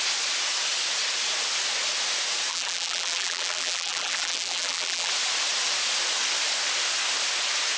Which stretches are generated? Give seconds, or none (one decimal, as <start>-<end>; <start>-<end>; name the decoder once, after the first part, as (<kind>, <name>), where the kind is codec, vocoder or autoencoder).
2.5-5.1 (vocoder, BigVGAN v2)